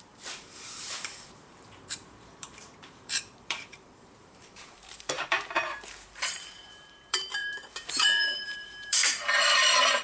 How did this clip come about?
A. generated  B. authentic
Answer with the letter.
A